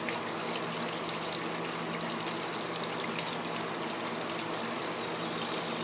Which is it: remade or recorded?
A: recorded